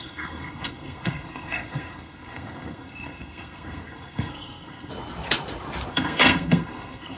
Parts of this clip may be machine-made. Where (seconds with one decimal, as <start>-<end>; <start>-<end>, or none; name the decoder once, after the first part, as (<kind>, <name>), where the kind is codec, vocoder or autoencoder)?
0.0-4.9 (codec, SNAC); 5.9-7.2